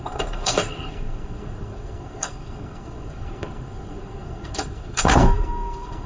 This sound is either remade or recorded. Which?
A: remade